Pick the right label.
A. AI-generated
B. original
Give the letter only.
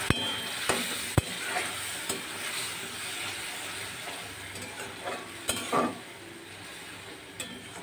B